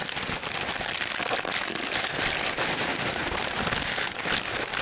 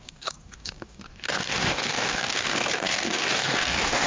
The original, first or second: first